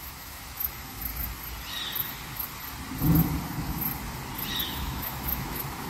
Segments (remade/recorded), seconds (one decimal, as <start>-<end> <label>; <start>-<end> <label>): 0.0-1.1 remade; 1.1-4.6 recorded; 4.6-5.9 remade